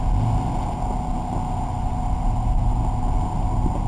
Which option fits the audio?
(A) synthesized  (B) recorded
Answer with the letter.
B